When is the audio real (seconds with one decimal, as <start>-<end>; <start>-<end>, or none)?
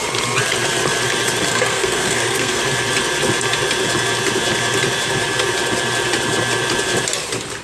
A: 0.0-1.5; 2.6-7.6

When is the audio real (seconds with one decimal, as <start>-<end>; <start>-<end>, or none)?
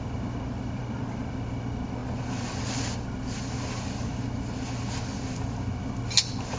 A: 0.0-6.6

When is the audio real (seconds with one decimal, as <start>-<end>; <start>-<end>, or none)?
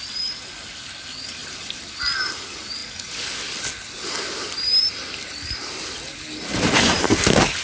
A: 0.0-1.4; 2.0-7.6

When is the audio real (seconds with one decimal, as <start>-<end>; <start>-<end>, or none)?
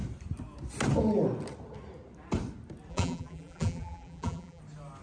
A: 0.0-2.9; 4.6-5.0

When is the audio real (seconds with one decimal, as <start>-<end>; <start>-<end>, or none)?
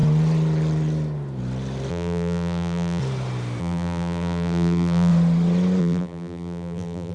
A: 0.0-1.9; 3.0-3.6; 5.1-5.8